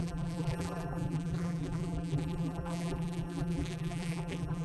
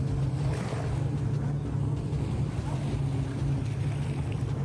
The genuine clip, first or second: second